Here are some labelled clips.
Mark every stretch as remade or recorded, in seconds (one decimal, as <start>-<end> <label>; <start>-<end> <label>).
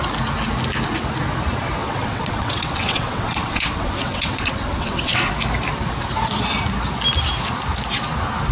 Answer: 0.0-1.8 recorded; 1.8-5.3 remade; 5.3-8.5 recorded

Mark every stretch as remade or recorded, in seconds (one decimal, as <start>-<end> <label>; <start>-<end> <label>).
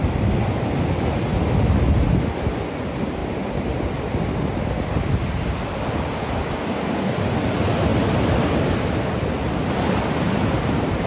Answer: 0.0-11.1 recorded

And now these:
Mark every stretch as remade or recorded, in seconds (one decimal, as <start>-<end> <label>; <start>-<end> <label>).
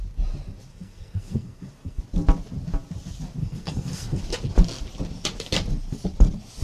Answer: 0.0-0.7 recorded; 0.7-2.0 remade; 2.0-3.4 recorded; 3.4-4.2 remade; 4.2-6.6 recorded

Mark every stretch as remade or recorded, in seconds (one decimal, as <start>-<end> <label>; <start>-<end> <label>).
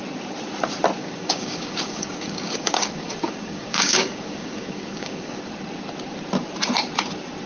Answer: 0.0-1.0 recorded; 1.0-5.4 remade; 5.4-7.5 recorded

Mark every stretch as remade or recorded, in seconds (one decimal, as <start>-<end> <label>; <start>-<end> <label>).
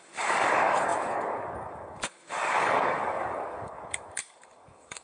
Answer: 0.0-5.0 remade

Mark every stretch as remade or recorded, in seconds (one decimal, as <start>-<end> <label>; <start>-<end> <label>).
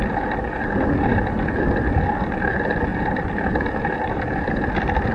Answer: 0.0-2.9 recorded; 2.9-4.5 remade; 4.5-5.1 recorded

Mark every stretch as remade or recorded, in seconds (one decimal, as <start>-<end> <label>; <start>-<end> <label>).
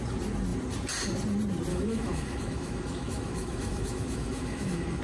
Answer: 0.0-1.7 recorded; 1.7-5.0 remade